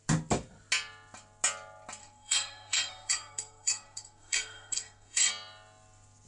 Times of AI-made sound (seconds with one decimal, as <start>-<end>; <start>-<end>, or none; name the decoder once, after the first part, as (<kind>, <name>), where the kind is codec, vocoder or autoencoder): 2.0-5.3 (codec, SNAC)